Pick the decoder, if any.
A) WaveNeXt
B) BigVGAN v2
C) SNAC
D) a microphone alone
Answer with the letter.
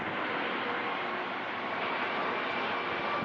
B